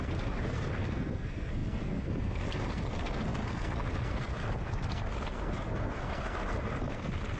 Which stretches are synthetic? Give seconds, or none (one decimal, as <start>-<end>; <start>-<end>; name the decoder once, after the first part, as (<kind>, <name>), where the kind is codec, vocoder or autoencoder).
0.0-7.4 (codec, SNAC)